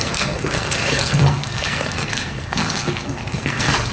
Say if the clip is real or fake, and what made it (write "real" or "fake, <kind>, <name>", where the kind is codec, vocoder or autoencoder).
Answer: fake, codec, SNAC